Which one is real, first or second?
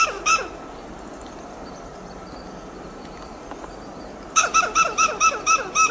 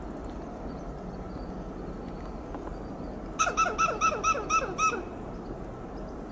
second